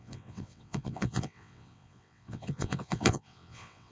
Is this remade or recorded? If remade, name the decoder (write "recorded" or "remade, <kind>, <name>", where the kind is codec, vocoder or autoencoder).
remade, vocoder, WaveNeXt